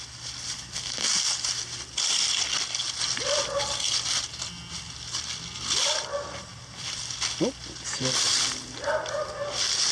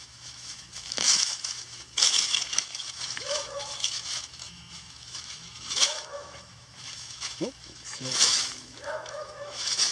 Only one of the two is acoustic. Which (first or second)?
first